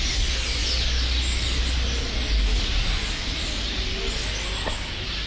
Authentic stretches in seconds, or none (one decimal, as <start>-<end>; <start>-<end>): 0.0-5.3